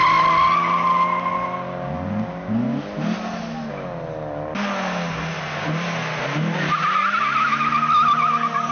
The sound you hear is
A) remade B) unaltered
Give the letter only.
B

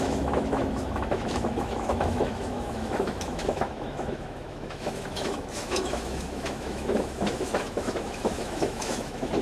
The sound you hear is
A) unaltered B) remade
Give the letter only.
B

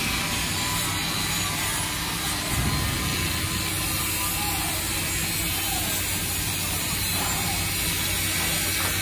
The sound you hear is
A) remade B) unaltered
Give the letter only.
B